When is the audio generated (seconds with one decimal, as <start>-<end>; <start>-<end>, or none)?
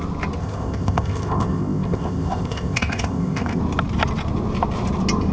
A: 0.4-3.6